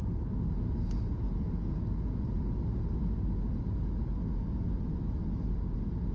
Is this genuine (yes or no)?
yes